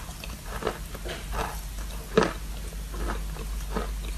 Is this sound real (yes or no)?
yes